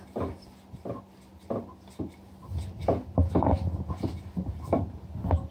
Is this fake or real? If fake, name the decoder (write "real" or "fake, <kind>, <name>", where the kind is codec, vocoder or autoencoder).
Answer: real